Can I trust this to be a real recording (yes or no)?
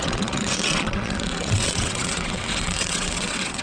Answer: no